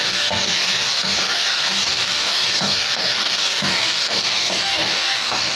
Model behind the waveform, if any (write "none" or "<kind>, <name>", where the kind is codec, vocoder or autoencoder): codec, DAC